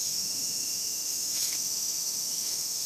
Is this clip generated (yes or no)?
yes